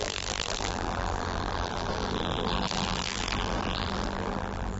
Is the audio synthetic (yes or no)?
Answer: yes